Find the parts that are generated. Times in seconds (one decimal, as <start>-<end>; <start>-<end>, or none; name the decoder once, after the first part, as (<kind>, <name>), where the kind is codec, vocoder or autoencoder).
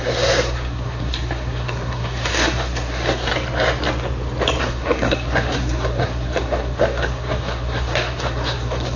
0.0-3.3 (codec, SNAC); 4.6-9.0